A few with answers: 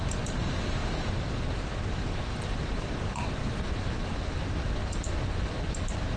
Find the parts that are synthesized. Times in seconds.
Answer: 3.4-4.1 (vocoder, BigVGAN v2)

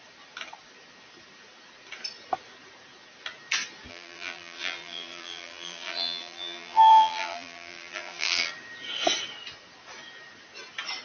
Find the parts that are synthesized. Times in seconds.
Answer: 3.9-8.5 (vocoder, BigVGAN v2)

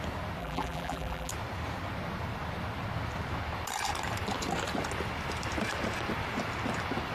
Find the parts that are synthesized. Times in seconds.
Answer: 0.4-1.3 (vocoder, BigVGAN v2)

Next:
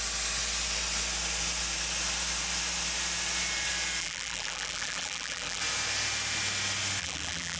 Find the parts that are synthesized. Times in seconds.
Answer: 4.0-5.6 (vocoder, BigVGAN v2); 7.0-7.6

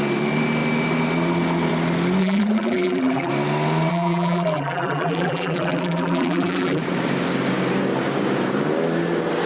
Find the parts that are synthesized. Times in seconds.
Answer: 2.2-3.3 (vocoder, BigVGAN v2); 3.9-6.8